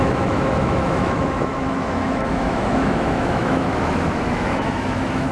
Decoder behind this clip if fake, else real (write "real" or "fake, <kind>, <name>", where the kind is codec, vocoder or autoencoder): fake, autoencoder, DAC-VAE